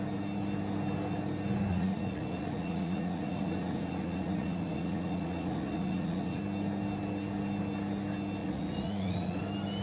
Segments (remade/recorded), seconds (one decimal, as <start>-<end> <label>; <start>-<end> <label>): 0.0-1.7 recorded; 1.7-6.4 remade; 6.4-8.4 recorded; 8.4-9.4 remade; 9.4-9.8 recorded